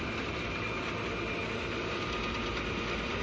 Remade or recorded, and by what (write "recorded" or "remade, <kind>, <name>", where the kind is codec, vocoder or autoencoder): recorded